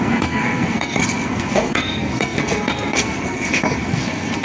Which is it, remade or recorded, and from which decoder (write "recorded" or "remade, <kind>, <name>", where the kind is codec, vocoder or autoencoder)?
remade, codec, SNAC